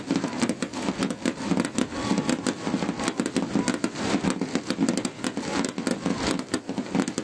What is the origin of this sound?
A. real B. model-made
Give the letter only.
A